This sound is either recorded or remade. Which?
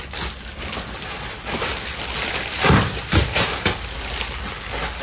recorded